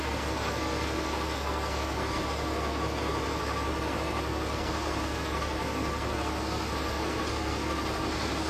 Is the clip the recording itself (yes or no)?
no